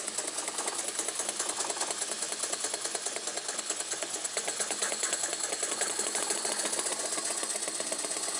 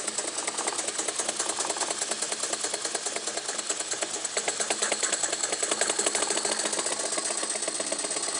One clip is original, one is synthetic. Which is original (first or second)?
second